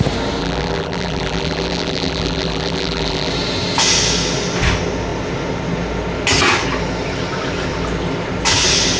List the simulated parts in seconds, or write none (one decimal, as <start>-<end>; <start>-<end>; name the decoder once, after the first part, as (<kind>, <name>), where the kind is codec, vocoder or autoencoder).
0.4-3.3 (vocoder, BigVGAN v2)